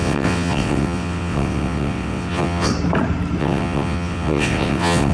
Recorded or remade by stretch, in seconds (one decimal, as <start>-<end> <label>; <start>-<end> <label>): 0.0-2.7 remade; 2.7-3.4 recorded; 3.4-5.1 remade